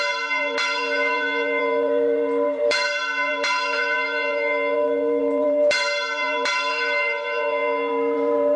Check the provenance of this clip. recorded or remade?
remade